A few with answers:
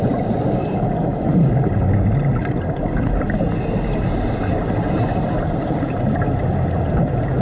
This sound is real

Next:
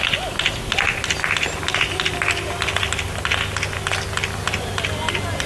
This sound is real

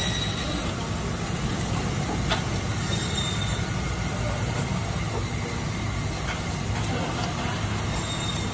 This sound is real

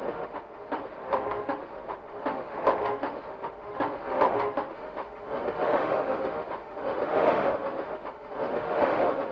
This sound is fake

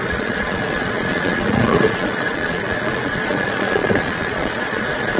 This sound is fake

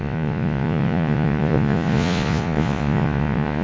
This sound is fake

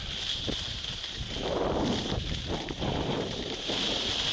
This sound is real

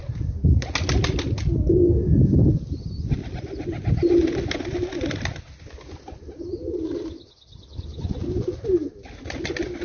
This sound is real